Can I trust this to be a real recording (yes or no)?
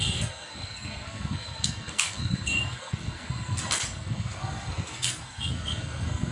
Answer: no